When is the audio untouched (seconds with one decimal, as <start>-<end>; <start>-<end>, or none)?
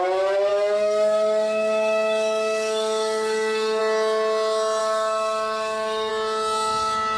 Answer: 0.0-0.5; 3.8-4.8; 6.1-7.2